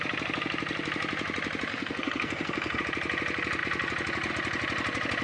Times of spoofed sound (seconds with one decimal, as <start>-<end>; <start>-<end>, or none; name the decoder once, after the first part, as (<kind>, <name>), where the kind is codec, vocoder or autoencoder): 1.7-2.8 (codec, SNAC)